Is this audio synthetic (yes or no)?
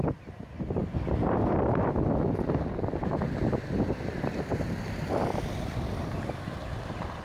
no